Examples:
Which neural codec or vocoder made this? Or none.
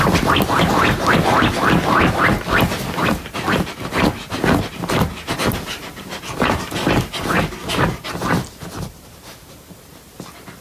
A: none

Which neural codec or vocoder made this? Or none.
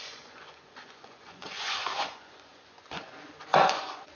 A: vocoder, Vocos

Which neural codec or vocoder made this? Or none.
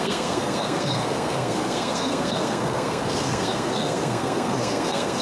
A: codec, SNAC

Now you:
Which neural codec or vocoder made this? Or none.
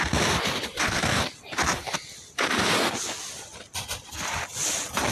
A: none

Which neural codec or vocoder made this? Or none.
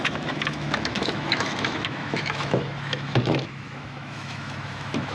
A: autoencoder, DAC-VAE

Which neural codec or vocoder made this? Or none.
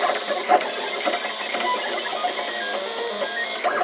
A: none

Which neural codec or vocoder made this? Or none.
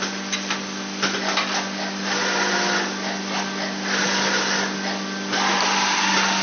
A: none